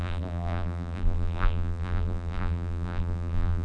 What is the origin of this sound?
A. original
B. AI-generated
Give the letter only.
B